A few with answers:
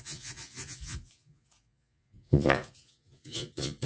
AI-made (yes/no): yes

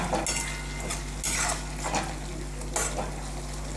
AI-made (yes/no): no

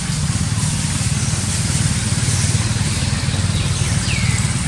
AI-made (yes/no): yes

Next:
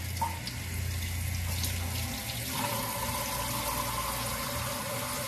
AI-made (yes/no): no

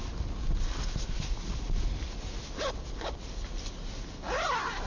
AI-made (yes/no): no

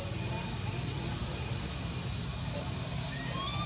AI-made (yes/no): no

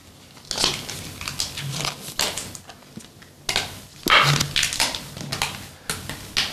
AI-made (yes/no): no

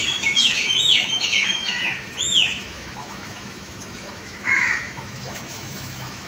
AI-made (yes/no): yes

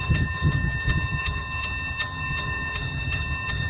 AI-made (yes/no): yes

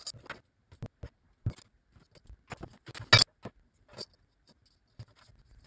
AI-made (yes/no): no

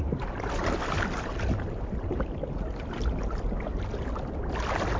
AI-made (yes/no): no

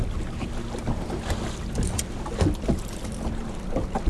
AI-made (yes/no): no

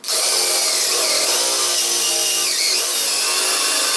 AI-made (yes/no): no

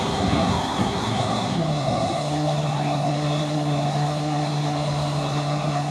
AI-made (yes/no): yes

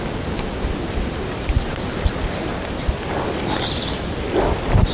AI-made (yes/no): no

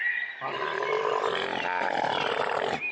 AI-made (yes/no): no